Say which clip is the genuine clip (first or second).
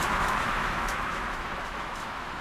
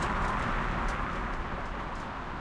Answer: second